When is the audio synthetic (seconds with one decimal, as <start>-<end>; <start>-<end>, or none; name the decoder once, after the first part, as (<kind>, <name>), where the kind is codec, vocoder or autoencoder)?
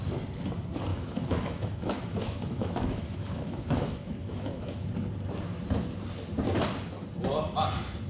0.9-4.9 (autoencoder, DAC-VAE)